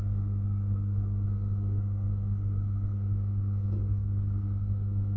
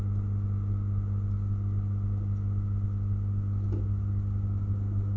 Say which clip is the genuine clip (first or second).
second